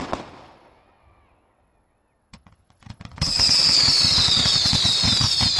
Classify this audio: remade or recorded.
remade